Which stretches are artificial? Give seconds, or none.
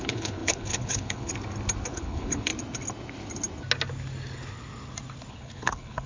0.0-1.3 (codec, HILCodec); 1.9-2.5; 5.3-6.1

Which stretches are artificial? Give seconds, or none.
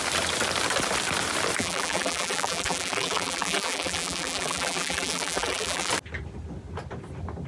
1.6-5.9 (vocoder, BigVGAN v2)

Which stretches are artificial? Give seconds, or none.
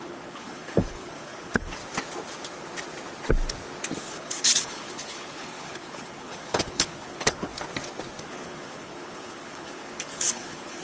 0.0-1.8 (codec, HILCodec); 4.0-7.5; 8.2-10.8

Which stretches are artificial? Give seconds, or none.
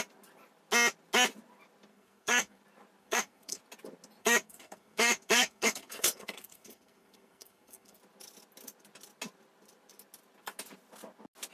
1.9-2.6 (codec, SNAC); 3.0-3.6; 4.2-8.0